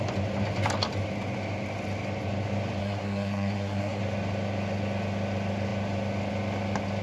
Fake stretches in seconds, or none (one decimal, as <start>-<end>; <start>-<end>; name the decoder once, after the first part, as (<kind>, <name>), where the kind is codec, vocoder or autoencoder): 2.8-4.0 (codec, SNAC)